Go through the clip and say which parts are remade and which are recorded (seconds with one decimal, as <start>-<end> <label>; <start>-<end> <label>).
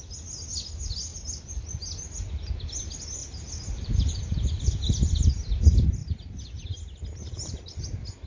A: 0.0-3.2 recorded; 3.2-4.2 remade; 4.2-8.3 recorded